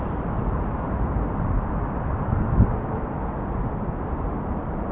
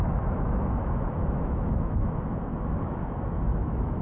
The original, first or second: first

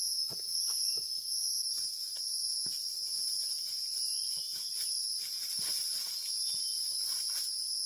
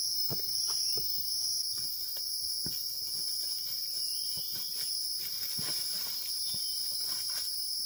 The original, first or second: first